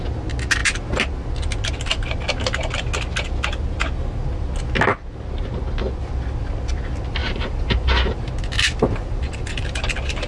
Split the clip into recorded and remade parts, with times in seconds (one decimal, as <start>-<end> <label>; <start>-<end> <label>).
0.0-7.2 recorded; 7.2-8.3 remade; 8.3-9.0 recorded; 9.0-10.3 remade